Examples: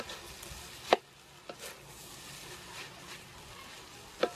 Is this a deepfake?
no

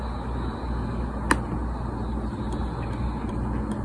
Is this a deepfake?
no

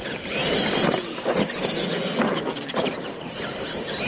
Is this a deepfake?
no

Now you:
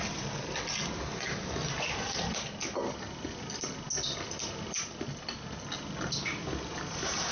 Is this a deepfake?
no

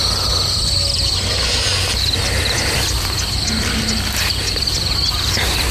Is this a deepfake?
no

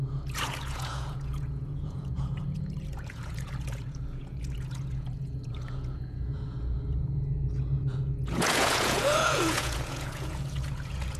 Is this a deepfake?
yes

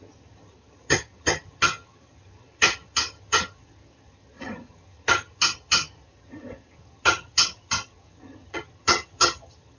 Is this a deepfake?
yes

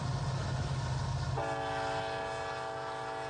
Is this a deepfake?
no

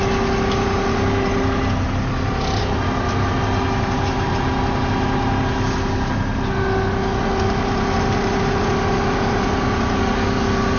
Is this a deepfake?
no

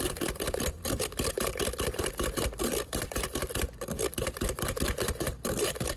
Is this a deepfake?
yes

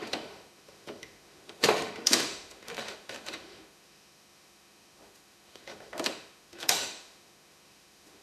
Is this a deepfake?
yes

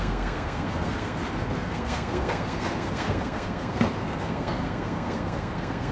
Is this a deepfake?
yes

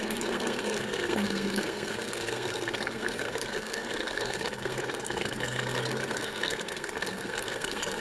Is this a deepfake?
yes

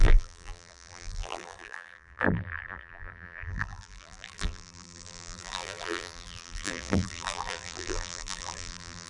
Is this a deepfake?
yes